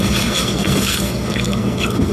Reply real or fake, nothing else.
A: fake